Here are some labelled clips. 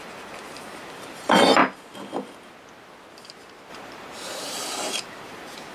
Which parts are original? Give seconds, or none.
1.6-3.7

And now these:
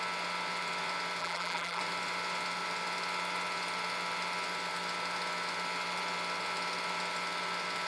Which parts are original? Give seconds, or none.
0.0-1.2; 1.8-7.9

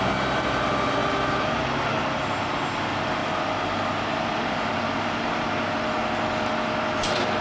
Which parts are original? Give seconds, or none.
0.0-3.2; 5.7-7.4

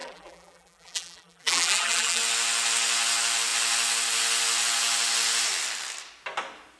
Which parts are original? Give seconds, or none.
2.2-6.8

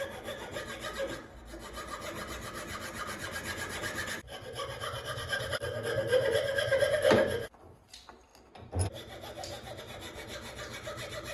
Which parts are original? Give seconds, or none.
0.0-11.3

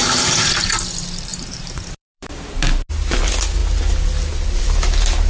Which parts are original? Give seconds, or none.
0.7-1.3; 2.7-5.3

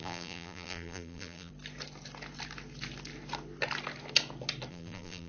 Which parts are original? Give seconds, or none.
1.5-4.7